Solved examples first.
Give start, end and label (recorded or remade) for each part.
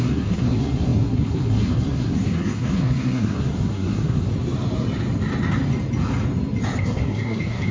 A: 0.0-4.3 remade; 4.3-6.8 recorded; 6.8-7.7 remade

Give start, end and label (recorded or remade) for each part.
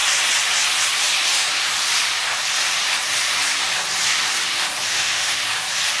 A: 0.0-4.9 recorded; 4.9-5.4 remade; 5.4-6.0 recorded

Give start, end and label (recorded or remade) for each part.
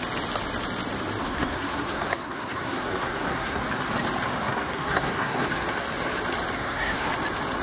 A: 0.0-1.2 recorded; 1.2-3.6 remade; 3.6-4.3 recorded; 4.3-5.5 remade; 5.5-6.6 recorded; 6.6-7.1 remade; 7.1-7.6 recorded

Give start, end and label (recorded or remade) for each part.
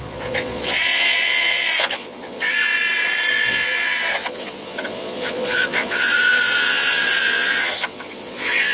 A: 0.0-2.7 remade; 2.7-3.3 recorded; 3.3-8.7 remade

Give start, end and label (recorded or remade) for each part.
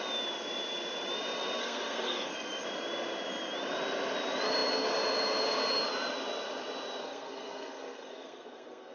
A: 0.0-1.6 recorded; 1.6-2.3 remade; 2.3-7.0 recorded; 7.0-8.9 remade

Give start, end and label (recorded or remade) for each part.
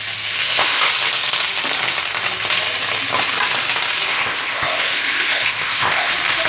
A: 0.0-0.4 recorded; 0.4-0.9 remade; 0.9-4.1 recorded; 4.1-6.1 remade; 6.1-6.5 recorded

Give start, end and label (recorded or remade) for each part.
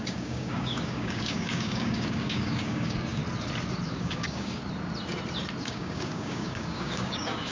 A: 0.0-3.2 remade; 3.2-4.0 recorded; 4.0-4.6 remade; 4.6-5.6 recorded; 5.6-7.5 remade